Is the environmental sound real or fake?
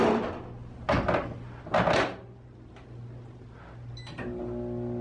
real